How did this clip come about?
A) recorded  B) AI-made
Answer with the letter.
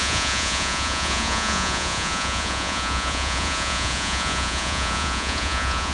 B